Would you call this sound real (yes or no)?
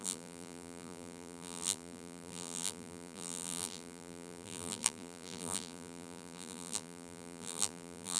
no